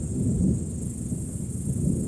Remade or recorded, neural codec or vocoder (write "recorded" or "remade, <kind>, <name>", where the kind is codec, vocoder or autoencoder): recorded